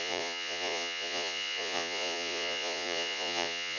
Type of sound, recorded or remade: remade